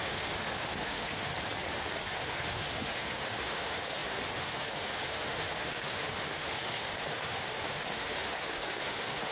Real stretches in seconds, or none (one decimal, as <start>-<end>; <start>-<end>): 1.3-2.1